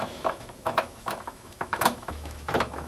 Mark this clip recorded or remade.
remade